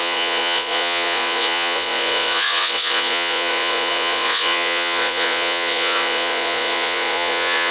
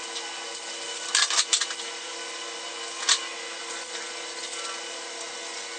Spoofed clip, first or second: first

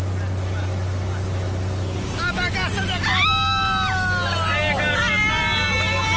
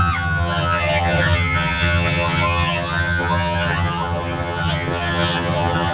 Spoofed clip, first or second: second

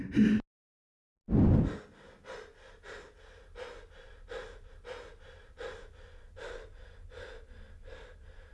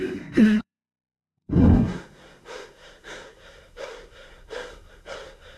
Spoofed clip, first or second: second